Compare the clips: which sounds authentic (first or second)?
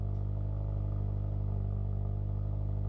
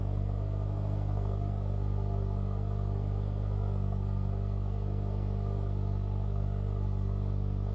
first